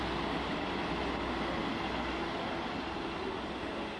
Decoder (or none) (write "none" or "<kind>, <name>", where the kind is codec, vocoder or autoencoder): none